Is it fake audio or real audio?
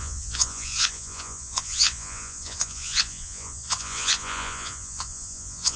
fake